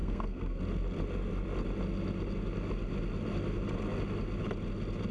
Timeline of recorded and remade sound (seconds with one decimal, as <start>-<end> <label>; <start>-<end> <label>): 0.0-0.6 remade; 0.6-5.1 recorded